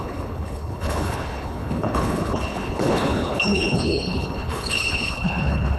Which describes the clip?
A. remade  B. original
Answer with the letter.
A